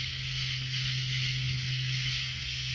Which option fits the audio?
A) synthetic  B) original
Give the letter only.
A